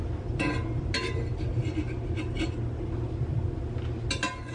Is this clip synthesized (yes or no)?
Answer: no